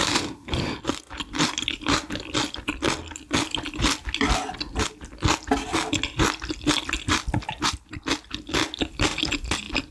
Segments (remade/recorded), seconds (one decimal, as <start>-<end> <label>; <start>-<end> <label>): 0.0-9.9 recorded